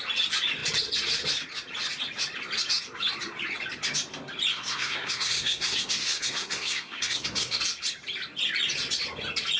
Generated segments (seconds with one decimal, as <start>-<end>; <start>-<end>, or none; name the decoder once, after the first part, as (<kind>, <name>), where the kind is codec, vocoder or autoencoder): 4.5-7.6 (codec, SNAC)